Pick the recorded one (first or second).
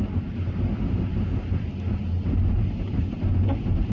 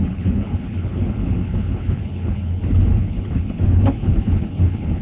first